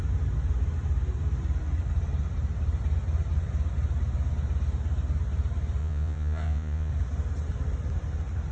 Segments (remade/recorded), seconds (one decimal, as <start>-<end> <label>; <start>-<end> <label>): 0.0-5.8 recorded; 5.8-6.9 remade; 6.9-8.5 recorded